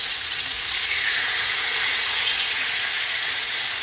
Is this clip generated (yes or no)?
yes